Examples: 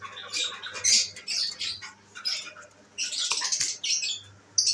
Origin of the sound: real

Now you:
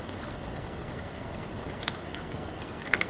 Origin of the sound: fake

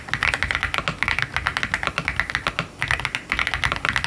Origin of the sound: real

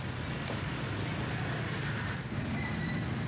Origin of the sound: real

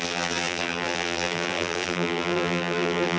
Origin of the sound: fake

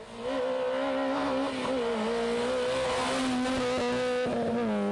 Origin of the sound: real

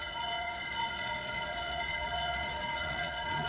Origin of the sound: fake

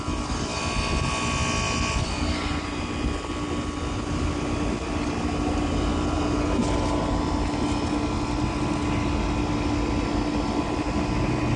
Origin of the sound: real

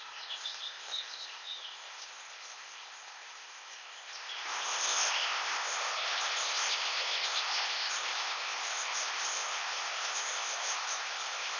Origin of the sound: fake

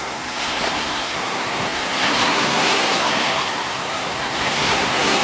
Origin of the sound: fake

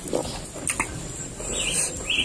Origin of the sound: real